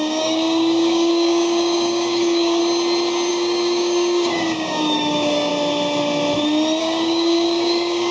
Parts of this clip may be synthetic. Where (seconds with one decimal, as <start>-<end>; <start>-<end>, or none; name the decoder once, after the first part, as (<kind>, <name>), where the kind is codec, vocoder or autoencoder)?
0.0-2.6 (codec, DAC); 3.3-5.5; 6.8-8.1